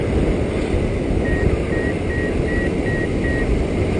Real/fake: real